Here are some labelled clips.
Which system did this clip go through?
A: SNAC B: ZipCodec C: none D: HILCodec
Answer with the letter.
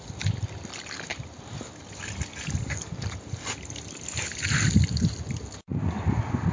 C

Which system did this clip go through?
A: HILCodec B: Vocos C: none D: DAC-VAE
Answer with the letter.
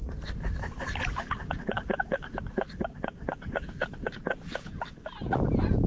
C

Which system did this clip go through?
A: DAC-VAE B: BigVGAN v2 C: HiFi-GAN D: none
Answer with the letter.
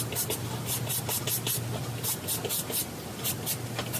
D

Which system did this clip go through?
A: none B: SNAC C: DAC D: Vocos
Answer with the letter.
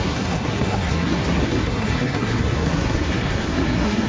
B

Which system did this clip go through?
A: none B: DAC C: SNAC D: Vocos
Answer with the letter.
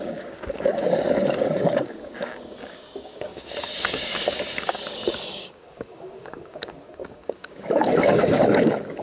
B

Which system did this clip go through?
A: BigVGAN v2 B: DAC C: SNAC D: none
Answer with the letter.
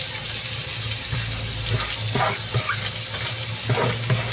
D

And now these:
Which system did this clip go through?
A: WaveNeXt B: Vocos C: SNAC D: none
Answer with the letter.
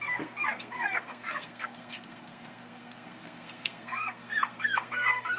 C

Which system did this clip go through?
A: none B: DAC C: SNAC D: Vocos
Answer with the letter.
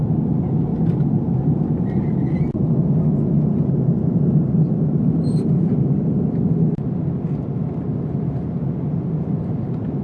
A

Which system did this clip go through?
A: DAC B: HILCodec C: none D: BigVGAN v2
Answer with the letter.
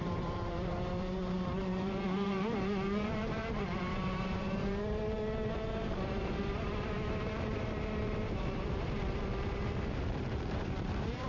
D